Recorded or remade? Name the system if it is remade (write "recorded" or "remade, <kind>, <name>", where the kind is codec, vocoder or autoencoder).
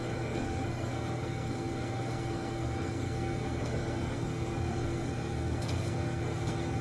remade, codec, SNAC